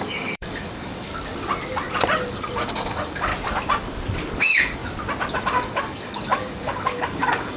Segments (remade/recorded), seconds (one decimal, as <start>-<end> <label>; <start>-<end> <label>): 0.0-1.1 remade; 1.1-2.3 recorded; 2.3-3.3 remade; 3.3-4.3 recorded; 4.3-4.8 remade; 4.8-5.4 recorded; 5.4-7.6 remade